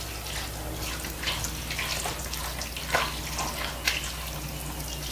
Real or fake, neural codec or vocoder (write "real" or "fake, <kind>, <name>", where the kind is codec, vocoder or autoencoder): real